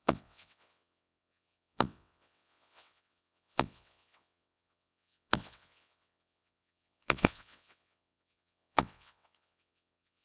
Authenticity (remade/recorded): remade